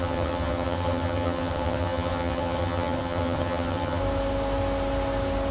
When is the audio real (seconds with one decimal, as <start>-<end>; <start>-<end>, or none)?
4.0-5.5